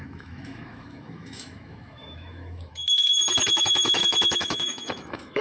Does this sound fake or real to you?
fake